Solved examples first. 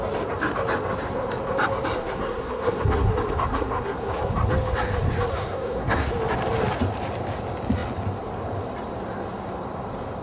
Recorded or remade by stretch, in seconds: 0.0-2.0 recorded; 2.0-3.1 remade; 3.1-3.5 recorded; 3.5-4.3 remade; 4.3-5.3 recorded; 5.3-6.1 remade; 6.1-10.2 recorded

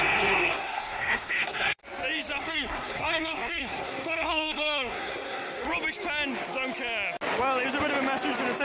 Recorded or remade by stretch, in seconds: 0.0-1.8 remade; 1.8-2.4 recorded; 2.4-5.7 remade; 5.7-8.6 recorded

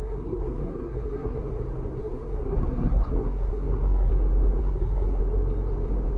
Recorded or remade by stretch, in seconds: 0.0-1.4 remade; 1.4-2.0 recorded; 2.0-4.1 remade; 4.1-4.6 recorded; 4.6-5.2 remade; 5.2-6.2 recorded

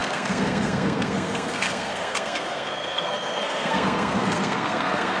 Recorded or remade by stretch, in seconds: 0.0-5.2 remade

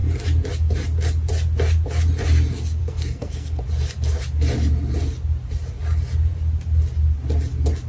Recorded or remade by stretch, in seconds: 0.0-2.8 recorded; 2.8-3.6 remade; 3.6-7.9 recorded

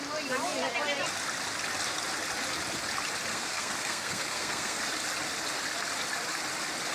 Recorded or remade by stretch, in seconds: 0.0-3.3 recorded; 3.3-4.8 remade; 4.8-6.9 recorded